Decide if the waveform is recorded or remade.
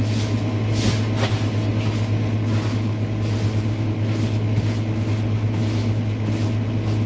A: recorded